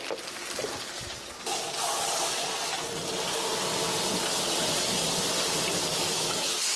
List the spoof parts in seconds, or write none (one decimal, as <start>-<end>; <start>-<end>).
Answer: 5.9-6.8